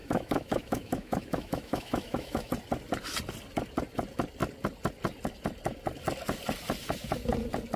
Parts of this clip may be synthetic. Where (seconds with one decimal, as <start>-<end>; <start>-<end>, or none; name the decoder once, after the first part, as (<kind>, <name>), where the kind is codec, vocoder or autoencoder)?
0.0-2.5 (autoencoder, DAC-VAE)